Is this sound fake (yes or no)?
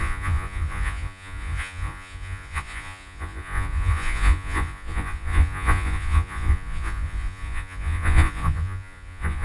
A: yes